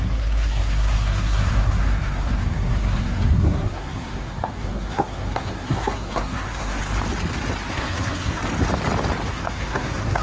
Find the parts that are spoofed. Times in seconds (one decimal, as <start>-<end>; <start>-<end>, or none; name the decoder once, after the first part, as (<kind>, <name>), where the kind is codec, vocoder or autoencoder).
0.0-6.8 (codec, SNAC); 7.7-8.4; 9.3-10.2